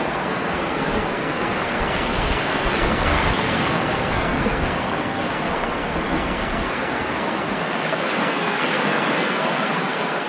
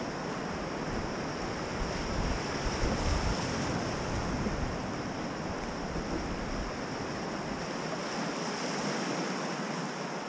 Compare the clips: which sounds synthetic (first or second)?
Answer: first